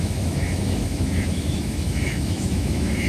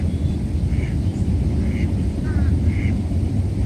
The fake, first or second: first